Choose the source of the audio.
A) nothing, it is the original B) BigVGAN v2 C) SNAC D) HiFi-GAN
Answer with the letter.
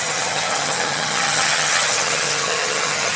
D